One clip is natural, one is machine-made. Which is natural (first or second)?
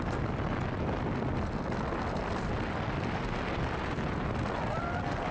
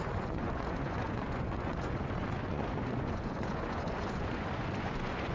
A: first